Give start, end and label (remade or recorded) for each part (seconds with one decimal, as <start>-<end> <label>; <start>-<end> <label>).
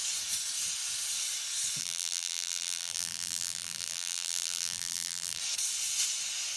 0.0-1.8 recorded; 1.8-5.4 remade; 5.4-6.6 recorded